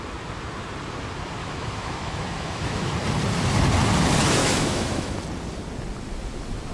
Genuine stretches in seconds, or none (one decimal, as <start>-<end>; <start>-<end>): 0.0-1.4; 2.9-4.4; 5.2-6.7

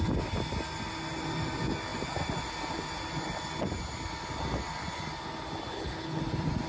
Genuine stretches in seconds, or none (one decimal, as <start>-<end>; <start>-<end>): 0.0-5.7; 6.2-6.7